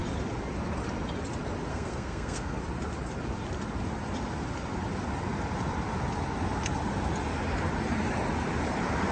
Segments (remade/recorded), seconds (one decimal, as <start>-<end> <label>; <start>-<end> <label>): 0.0-1.7 recorded; 1.7-2.6 remade; 2.6-9.1 recorded